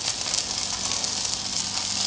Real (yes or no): yes